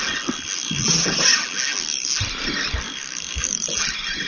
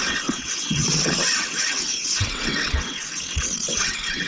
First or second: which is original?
first